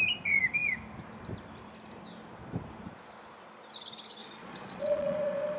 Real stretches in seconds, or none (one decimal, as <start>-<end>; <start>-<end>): 0.0-4.2